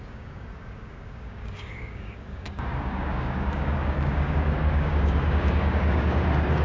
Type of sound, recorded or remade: remade